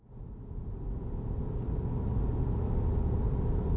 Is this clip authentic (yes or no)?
yes